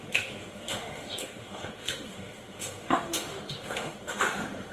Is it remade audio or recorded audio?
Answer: remade